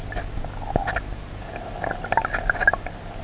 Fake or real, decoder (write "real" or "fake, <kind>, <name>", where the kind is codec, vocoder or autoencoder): real